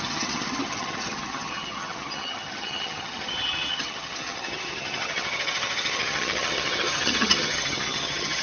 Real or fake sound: fake